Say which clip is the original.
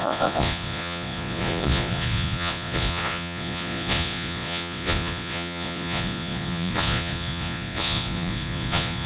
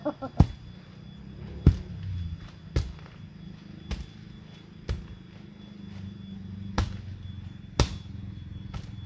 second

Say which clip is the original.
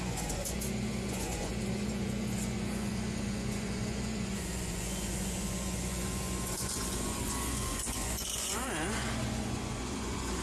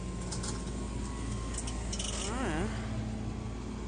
second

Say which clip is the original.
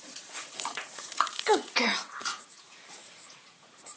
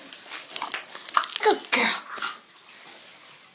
second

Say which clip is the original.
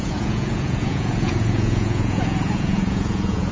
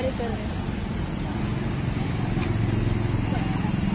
second